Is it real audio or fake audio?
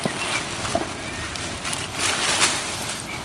real